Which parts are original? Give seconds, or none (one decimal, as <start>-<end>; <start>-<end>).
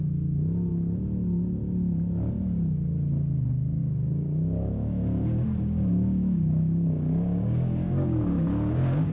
0.0-3.8